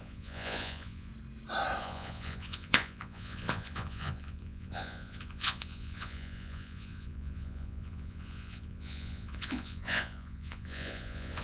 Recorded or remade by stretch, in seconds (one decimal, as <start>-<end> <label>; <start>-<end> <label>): 0.0-1.1 remade; 1.1-1.8 recorded; 1.8-11.4 remade